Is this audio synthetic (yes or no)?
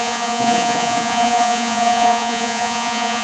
yes